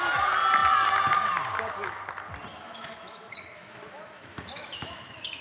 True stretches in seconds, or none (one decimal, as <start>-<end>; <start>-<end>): 0.0-2.5